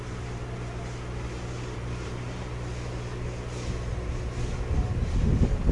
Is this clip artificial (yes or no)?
no